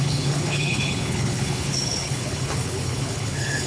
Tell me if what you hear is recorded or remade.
remade